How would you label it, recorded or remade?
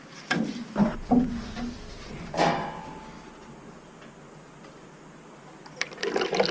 recorded